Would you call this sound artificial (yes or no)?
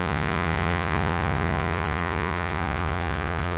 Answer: yes